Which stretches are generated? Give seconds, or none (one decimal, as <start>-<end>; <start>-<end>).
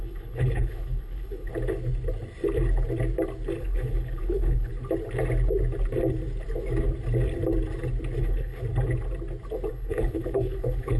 0.0-1.5; 3.6-4.7; 8.2-8.6; 9.7-11.0